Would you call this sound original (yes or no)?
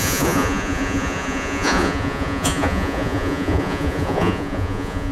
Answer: no